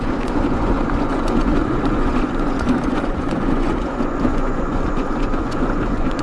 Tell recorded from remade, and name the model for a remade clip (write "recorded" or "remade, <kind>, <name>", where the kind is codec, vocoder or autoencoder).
remade, vocoder, Vocos